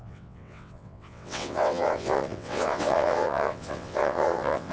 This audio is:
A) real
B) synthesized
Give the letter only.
B